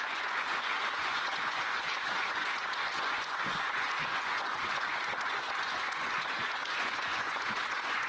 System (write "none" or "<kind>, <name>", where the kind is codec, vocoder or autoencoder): vocoder, Vocos